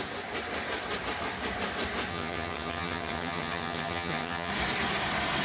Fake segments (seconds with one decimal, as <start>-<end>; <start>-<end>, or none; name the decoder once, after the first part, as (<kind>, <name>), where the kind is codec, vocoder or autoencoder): 2.1-4.5 (vocoder, HiFi-GAN)